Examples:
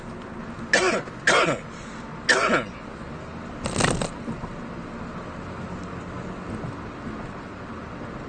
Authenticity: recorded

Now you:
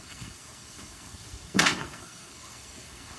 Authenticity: remade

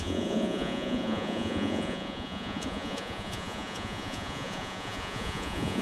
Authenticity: remade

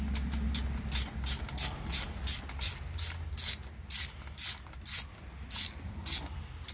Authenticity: recorded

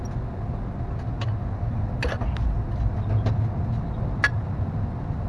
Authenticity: recorded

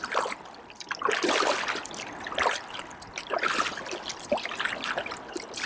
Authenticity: recorded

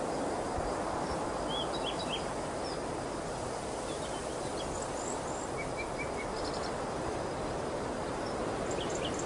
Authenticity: recorded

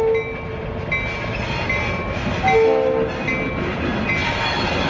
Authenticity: recorded